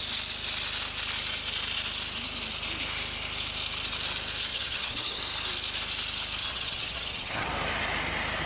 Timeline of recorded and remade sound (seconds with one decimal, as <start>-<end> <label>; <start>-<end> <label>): 0.0-4.5 recorded; 4.5-5.2 remade; 5.2-6.4 recorded; 6.4-7.5 remade; 7.5-8.5 recorded